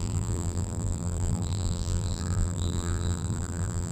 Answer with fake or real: fake